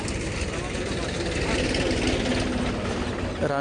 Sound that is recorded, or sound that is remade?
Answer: recorded